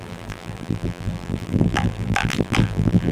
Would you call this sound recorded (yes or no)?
no